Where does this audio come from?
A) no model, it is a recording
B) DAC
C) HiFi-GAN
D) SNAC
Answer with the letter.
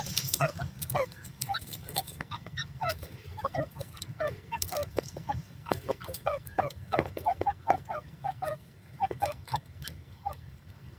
D